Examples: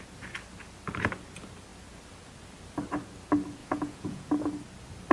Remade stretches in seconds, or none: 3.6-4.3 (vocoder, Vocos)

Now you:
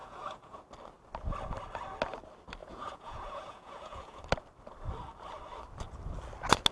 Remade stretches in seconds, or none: 0.0-0.6 (vocoder, Vocos); 2.6-4.2

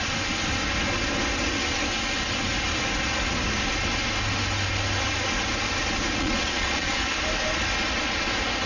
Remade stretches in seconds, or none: 6.2-6.9 (vocoder, Vocos)

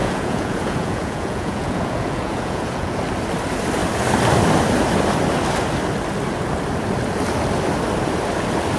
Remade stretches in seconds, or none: 0.0-3.0 (vocoder, Vocos)

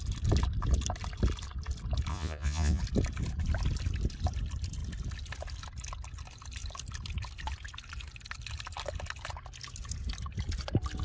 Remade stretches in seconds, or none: 2.1-2.8 (vocoder, Vocos)